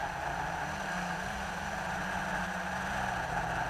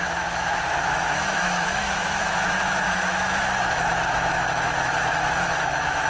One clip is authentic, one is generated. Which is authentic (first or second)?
first